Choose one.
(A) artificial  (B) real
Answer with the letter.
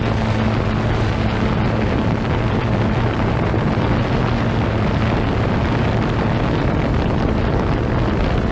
B